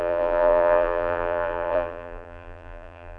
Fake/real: fake